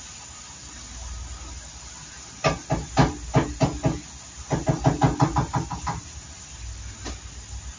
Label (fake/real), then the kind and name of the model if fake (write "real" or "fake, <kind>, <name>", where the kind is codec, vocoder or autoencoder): real